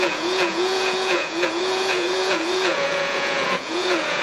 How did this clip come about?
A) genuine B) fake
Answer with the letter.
B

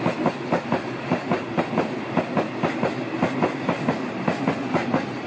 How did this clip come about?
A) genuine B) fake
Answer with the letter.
A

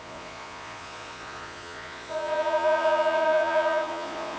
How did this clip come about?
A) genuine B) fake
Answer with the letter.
B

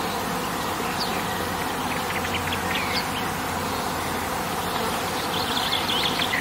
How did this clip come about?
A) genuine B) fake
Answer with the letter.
A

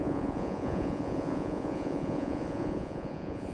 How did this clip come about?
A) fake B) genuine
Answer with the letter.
A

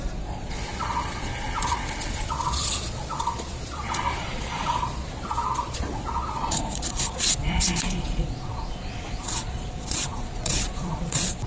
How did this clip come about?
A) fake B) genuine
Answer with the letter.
A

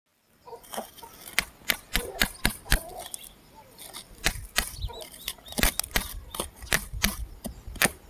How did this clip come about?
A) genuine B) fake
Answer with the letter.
A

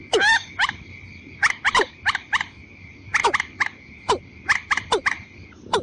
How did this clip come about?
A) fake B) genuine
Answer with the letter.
B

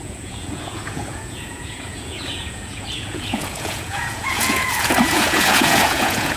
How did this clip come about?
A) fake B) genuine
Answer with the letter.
A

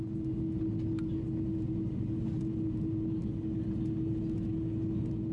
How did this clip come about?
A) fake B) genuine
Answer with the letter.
B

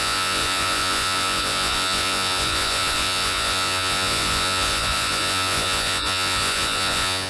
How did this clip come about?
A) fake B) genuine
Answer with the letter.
A